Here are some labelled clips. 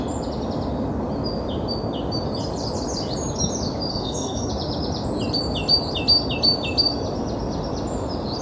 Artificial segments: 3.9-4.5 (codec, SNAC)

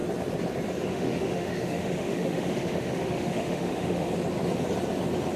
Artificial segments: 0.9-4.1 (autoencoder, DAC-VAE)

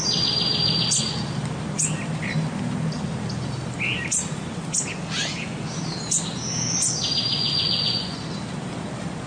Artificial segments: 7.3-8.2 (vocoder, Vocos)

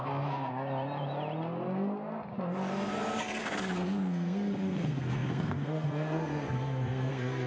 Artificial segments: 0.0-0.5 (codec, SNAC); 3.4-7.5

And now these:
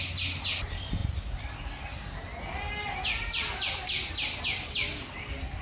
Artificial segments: none

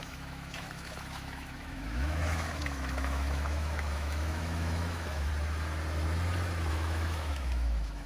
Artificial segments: 0.0-5.3 (autoencoder, DAC-VAE); 6.7-8.1

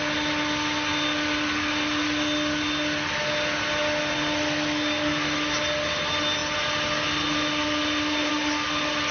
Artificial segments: none